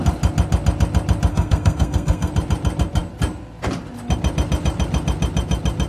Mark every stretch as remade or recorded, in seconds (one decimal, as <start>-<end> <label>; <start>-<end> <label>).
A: 0.0-1.3 recorded; 1.3-2.3 remade; 2.3-5.9 recorded